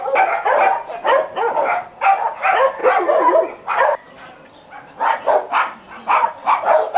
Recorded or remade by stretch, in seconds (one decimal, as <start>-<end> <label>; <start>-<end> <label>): 0.0-7.0 recorded